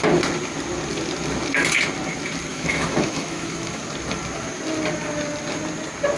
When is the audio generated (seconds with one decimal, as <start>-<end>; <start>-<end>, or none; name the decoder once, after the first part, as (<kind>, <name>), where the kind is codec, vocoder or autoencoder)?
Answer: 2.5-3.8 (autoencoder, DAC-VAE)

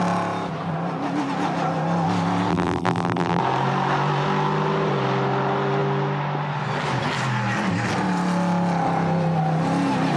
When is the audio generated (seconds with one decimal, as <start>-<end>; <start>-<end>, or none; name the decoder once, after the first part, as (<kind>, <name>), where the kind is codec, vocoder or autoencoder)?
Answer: 2.5-3.4 (vocoder, BigVGAN v2)

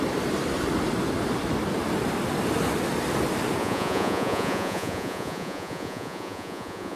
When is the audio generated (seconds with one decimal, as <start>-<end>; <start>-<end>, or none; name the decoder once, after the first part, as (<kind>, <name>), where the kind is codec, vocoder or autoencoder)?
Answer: 3.6-7.0 (vocoder, Vocos)